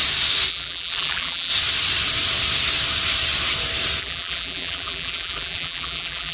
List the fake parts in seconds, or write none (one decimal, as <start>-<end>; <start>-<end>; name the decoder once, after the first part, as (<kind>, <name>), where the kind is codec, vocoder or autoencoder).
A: 0.5-1.5 (vocoder, BigVGAN v2); 4.0-6.3